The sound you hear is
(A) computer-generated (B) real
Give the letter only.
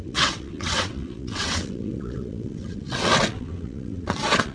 A